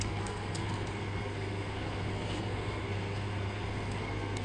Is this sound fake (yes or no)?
yes